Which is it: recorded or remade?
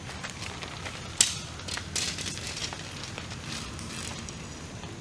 recorded